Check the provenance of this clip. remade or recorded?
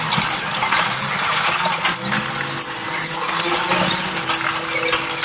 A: recorded